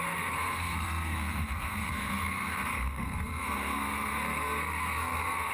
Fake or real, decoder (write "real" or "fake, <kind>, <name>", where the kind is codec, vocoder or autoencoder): fake, codec, SNAC